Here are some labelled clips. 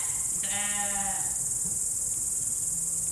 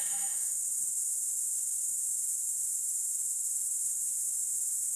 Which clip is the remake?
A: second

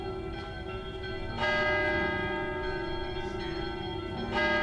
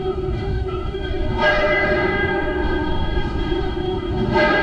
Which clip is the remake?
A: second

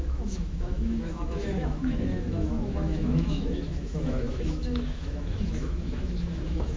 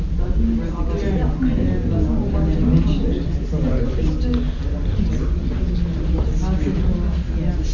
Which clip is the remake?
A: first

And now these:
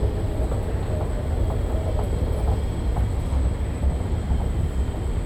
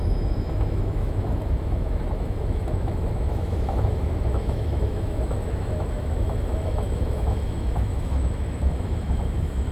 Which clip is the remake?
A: second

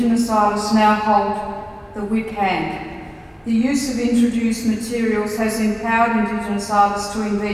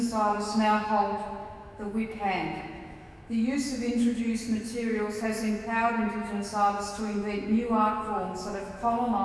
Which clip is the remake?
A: second